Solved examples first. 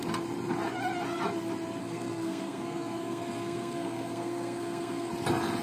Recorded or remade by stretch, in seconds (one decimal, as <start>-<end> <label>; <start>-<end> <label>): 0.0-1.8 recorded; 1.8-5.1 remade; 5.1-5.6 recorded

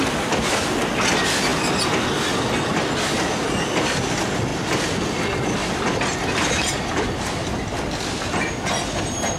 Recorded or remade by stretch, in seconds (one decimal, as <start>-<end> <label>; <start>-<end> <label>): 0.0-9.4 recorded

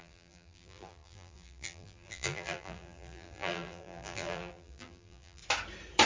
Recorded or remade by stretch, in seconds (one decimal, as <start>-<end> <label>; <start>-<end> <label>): 0.0-5.4 remade; 5.4-6.1 recorded

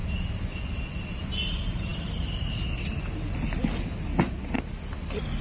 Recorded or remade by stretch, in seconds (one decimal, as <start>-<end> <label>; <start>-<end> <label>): 0.0-5.4 recorded

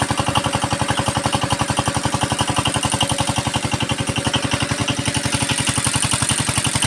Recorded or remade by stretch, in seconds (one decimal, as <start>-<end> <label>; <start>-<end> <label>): 0.0-6.9 recorded

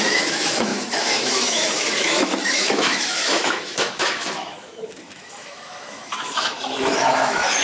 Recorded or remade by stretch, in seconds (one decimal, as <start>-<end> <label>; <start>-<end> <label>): 0.0-7.6 remade